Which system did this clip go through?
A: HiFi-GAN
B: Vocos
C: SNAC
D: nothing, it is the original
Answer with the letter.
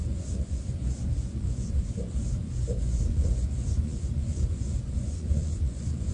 B